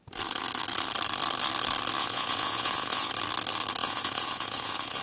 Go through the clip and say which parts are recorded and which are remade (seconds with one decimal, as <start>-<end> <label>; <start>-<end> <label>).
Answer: 0.0-2.0 recorded; 2.0-3.1 remade; 3.1-3.8 recorded; 3.8-5.0 remade